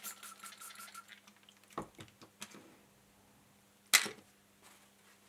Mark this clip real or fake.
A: real